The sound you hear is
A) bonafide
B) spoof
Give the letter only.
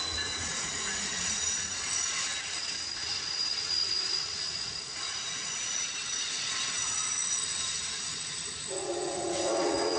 B